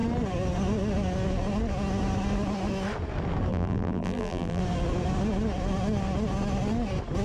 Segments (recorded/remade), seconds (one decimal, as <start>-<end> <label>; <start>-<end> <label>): 0.0-3.5 recorded; 3.5-4.6 remade; 4.6-7.2 recorded